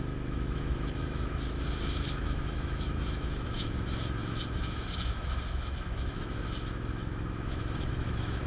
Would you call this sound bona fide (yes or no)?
no